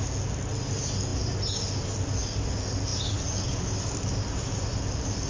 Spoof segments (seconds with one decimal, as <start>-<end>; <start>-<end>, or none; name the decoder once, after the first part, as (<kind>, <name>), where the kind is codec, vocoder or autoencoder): none